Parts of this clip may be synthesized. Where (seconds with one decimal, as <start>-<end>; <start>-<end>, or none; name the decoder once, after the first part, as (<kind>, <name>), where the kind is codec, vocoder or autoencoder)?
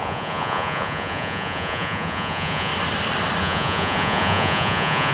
0.0-2.7 (vocoder, Vocos); 3.4-5.1